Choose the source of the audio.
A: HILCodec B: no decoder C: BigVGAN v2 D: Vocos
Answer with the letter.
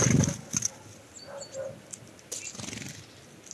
B